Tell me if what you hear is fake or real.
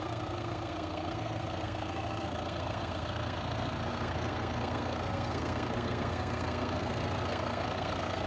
fake